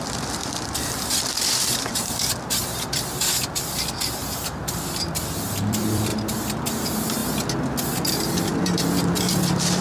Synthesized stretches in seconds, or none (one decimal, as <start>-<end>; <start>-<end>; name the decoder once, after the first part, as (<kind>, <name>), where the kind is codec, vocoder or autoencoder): 0.0-6.1 (vocoder, BigVGAN v2); 6.6-7.2; 8.1-9.8